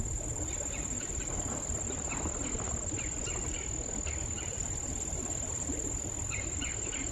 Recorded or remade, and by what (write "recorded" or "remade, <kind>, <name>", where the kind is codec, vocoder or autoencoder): remade, vocoder, BigVGAN v2